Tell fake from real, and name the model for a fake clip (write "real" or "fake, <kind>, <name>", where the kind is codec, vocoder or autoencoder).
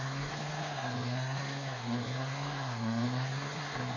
fake, codec, SNAC